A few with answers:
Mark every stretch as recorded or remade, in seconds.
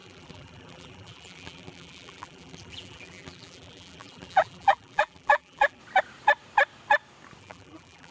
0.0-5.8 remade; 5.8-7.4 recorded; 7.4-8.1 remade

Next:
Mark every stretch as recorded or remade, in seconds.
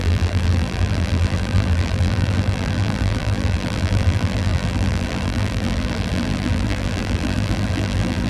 0.0-8.3 remade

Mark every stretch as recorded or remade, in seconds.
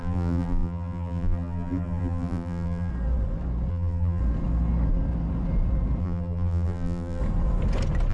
0.0-2.9 remade; 2.9-3.7 recorded; 3.7-4.2 remade; 4.2-6.0 recorded; 6.0-7.2 remade; 7.2-8.1 recorded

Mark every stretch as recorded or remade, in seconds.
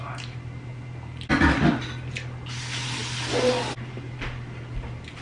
0.0-5.2 recorded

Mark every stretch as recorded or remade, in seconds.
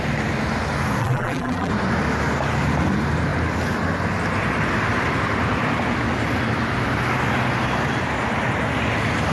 0.0-1.0 recorded; 1.0-1.7 remade; 1.7-9.3 recorded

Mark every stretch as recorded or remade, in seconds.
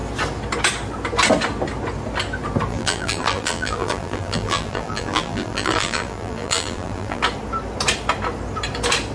0.0-2.7 recorded; 2.7-7.2 remade; 7.2-9.1 recorded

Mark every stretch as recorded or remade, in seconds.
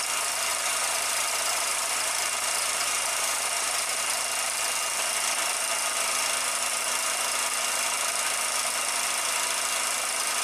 0.0-0.5 recorded; 0.5-4.0 remade; 4.0-10.4 recorded